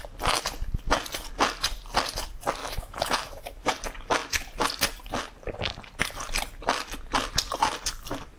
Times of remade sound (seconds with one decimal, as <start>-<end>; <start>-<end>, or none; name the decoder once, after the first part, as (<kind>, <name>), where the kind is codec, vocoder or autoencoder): 2.6-3.7 (autoencoder, DAC-VAE)